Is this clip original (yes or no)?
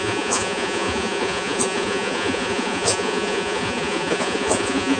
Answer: no